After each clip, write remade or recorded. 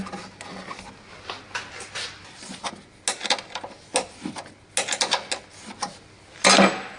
recorded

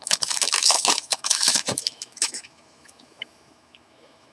remade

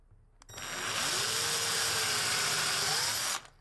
recorded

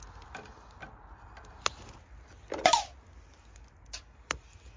recorded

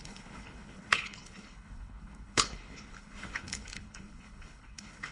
remade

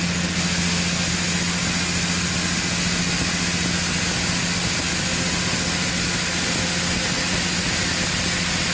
recorded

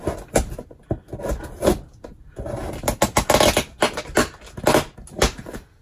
recorded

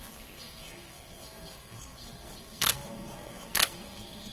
remade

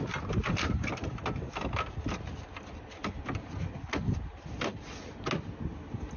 recorded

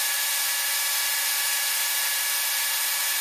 remade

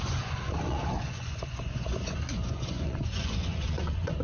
remade